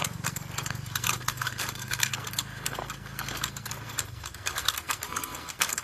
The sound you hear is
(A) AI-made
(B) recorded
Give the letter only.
A